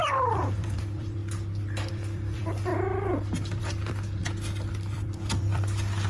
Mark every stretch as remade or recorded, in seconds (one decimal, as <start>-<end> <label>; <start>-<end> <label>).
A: 0.0-1.2 remade; 1.2-1.9 recorded; 1.9-2.7 remade; 2.7-3.5 recorded; 3.5-4.2 remade; 4.2-4.7 recorded; 4.7-6.1 remade